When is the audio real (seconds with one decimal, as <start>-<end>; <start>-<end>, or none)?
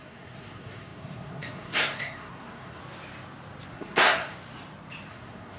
2.8-3.7; 4.3-5.1